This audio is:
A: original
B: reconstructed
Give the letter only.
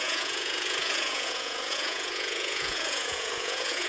B